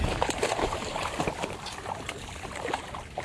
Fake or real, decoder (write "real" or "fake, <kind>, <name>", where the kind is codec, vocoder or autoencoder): fake, vocoder, BigVGAN v2